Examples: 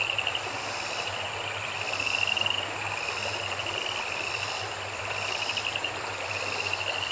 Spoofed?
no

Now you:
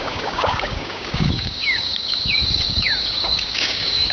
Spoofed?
yes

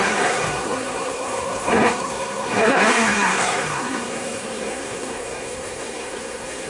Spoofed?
yes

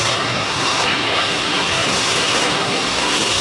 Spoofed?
yes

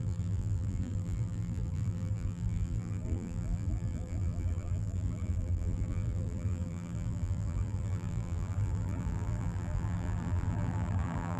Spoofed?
yes